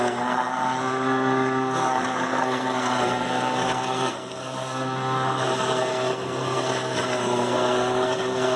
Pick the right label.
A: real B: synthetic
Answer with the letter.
B